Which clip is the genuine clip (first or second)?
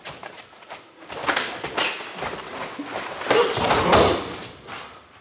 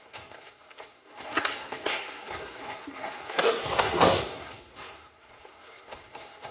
first